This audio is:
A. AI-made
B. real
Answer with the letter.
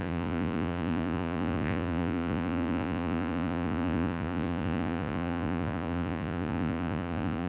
A